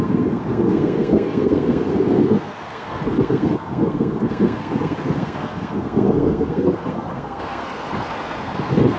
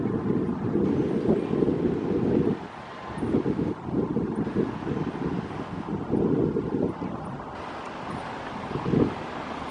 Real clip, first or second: second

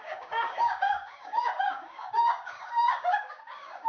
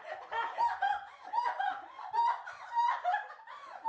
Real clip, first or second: second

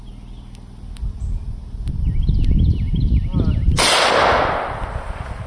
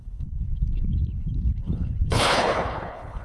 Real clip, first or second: first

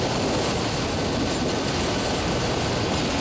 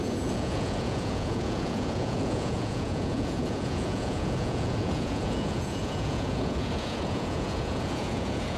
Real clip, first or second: first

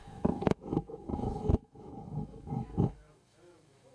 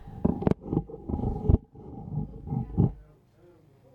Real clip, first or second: second